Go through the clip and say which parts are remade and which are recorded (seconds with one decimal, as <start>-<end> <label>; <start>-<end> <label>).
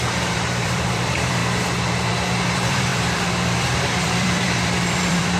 0.0-1.4 remade; 1.4-2.1 recorded; 2.1-5.4 remade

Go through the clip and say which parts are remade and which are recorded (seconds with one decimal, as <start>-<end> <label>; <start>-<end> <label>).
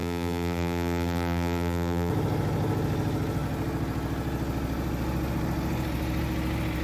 0.0-2.1 remade; 2.1-6.8 recorded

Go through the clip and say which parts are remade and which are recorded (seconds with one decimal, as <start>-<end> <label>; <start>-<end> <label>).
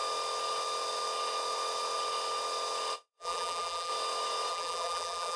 0.0-3.2 recorded; 3.2-3.9 remade; 3.9-4.5 recorded; 4.5-5.4 remade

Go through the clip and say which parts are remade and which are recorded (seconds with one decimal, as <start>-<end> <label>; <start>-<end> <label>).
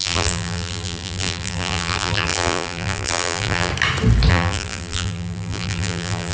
0.0-3.7 remade; 3.7-4.3 recorded; 4.3-6.3 remade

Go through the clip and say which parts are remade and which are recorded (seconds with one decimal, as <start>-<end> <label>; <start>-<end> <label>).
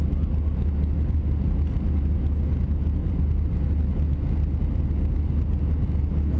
0.0-3.0 recorded; 3.0-3.8 remade; 3.8-6.4 recorded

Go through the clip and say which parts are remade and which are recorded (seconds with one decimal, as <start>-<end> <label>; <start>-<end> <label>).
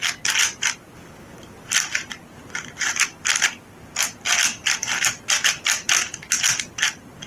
0.0-7.3 recorded